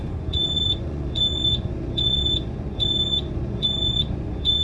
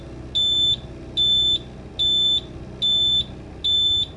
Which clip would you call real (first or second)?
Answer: second